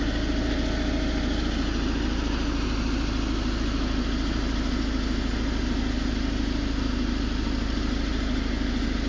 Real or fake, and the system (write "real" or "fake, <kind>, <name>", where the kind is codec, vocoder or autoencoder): real